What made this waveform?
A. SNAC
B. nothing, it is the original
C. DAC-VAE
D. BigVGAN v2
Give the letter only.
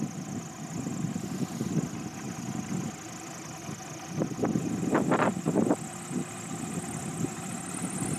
B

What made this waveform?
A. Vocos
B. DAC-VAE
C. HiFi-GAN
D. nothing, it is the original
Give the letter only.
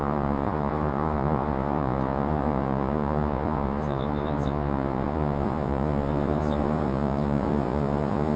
A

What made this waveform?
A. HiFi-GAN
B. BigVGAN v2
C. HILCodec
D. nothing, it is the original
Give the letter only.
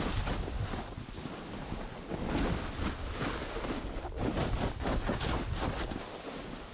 D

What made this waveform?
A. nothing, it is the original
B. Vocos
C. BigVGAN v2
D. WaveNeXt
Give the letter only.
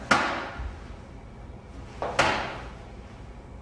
A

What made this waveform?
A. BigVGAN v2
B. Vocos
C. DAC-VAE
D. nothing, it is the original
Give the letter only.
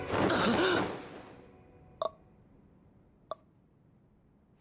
D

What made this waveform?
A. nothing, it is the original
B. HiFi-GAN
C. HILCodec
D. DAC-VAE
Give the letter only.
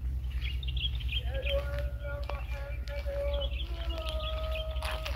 A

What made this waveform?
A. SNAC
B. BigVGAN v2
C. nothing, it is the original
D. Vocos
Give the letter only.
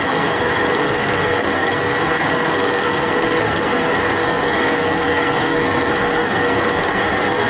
A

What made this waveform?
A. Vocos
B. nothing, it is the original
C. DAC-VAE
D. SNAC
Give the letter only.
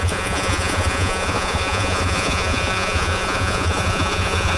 A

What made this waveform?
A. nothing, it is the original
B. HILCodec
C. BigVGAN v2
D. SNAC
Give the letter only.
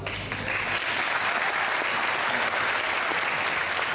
A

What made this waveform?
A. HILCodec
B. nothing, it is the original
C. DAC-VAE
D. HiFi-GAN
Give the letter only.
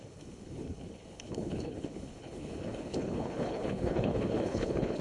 A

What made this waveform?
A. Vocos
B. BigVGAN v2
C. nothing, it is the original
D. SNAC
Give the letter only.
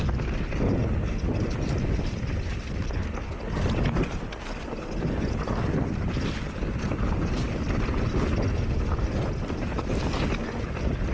C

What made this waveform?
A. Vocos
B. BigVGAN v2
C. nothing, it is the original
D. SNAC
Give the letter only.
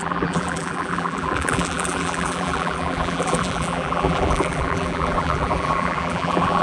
B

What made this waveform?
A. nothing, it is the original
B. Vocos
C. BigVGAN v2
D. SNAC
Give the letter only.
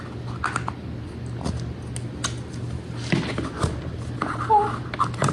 A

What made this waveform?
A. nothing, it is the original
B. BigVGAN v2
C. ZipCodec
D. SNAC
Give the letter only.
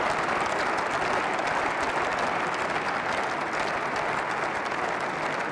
A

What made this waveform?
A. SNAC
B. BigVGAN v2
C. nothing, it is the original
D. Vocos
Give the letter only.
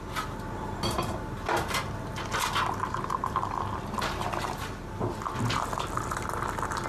C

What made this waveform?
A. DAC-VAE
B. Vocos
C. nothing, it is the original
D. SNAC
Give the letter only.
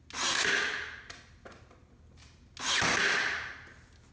C